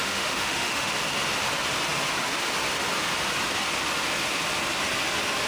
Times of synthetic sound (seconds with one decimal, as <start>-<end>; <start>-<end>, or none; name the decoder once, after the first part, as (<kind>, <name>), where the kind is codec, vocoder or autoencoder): 0.0-0.9 (autoencoder, DAC-VAE)